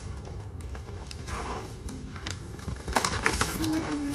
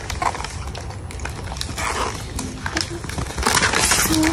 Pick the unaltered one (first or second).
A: second